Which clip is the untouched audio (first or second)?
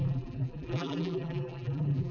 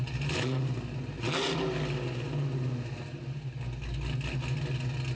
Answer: second